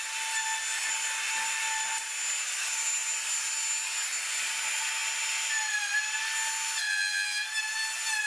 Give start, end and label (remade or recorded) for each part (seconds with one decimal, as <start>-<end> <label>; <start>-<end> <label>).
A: 0.0-8.3 recorded